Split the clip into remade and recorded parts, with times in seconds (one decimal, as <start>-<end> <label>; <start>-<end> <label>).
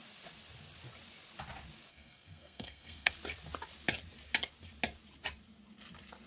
0.0-1.9 recorded; 1.9-3.1 remade; 3.1-6.3 recorded